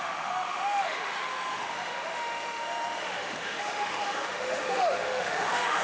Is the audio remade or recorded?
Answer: remade